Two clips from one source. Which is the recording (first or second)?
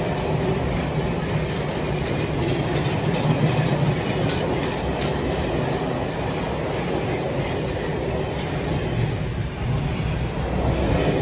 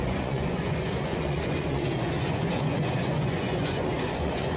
first